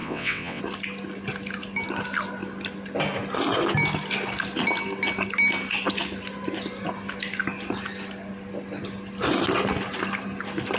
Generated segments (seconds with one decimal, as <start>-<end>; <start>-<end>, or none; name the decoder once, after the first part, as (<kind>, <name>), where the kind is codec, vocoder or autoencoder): 0.0-0.6 (vocoder, WaveNeXt)